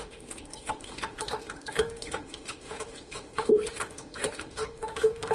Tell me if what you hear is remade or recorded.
remade